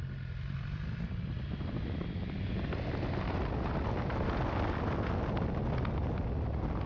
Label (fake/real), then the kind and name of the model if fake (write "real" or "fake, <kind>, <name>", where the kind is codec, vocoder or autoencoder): real